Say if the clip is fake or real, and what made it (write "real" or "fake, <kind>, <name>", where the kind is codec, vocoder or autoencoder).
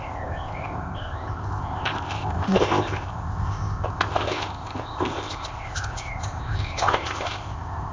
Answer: fake, codec, ZipCodec